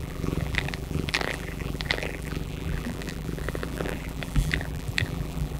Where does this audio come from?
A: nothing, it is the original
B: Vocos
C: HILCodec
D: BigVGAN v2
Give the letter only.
D